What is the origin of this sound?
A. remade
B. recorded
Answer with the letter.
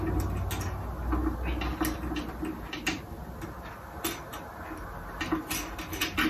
B